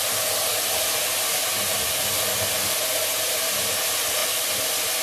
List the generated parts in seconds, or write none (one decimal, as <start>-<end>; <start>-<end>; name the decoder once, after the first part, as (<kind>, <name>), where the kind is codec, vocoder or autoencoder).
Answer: none